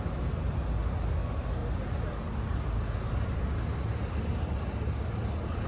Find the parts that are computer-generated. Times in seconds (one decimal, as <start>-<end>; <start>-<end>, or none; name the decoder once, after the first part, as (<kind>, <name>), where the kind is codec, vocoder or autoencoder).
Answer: none